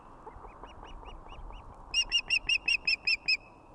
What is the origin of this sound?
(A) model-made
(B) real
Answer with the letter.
B